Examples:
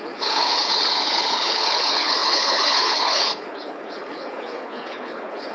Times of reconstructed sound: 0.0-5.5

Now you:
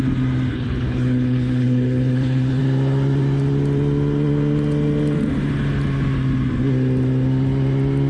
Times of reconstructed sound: 0.5-2.6

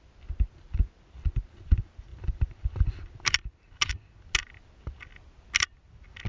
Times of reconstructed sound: none

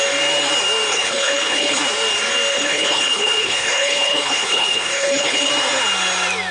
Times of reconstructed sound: 0.9-1.8; 2.5-5.5

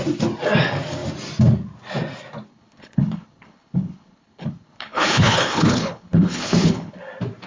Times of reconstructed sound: 2.5-7.0

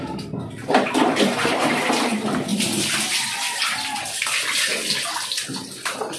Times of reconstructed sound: none